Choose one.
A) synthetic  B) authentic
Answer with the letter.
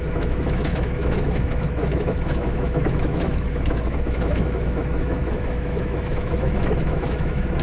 A